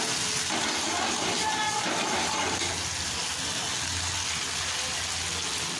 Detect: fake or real real